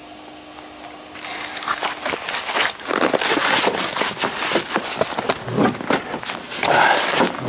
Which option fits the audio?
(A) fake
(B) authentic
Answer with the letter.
B